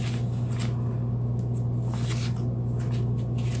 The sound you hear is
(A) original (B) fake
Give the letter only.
A